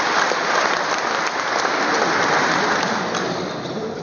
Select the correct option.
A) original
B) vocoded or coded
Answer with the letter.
A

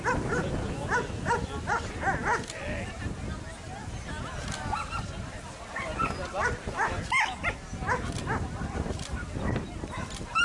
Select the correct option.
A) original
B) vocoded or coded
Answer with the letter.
A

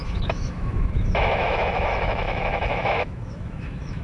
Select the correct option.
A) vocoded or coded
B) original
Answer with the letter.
A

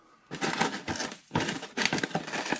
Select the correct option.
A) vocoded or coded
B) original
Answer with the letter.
B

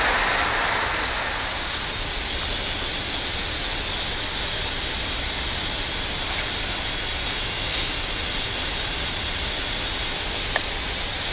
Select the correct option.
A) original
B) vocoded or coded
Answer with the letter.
A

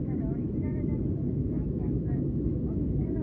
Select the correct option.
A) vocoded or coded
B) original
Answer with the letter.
A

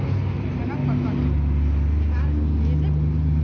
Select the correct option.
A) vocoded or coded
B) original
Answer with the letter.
B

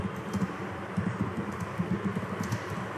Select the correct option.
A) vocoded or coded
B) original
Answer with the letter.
B